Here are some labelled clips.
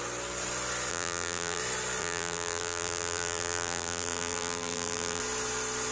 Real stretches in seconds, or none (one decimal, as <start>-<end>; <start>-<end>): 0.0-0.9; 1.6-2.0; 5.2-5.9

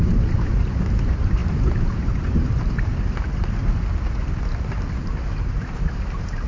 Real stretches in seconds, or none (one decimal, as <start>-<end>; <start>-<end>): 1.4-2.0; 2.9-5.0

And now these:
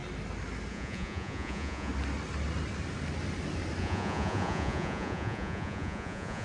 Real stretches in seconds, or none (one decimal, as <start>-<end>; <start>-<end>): 0.0-0.7; 1.9-3.8